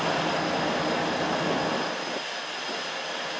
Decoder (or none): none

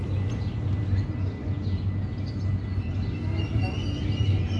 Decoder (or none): none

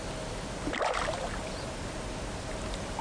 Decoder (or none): none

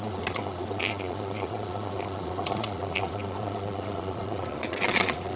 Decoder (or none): vocoder, Vocos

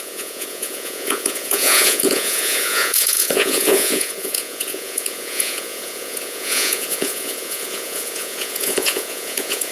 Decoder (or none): vocoder, Vocos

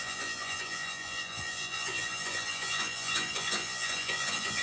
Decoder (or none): vocoder, Vocos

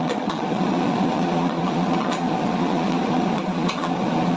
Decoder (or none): vocoder, Vocos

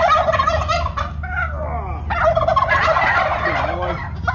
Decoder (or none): none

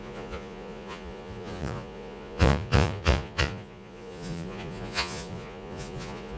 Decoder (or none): vocoder, Vocos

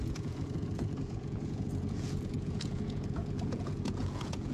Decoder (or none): vocoder, Vocos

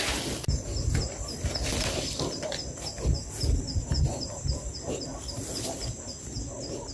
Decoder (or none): none